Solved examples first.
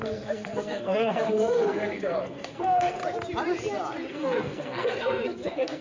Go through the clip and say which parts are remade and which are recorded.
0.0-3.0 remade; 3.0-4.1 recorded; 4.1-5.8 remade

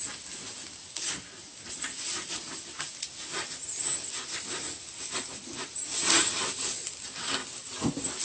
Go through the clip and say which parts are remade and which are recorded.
0.0-7.4 recorded; 7.4-8.2 remade